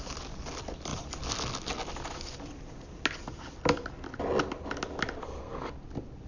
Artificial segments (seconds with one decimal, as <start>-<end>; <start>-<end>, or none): 5.2-5.7